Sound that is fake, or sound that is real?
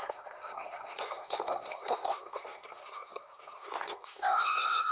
fake